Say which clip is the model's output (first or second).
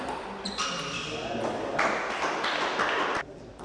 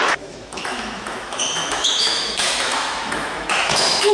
second